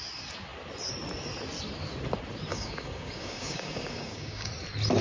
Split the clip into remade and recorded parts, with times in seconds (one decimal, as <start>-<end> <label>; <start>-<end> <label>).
0.0-2.5 recorded; 2.5-4.5 remade; 4.5-5.0 recorded